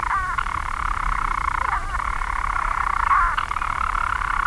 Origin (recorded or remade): remade